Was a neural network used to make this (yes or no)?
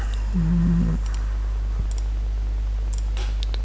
no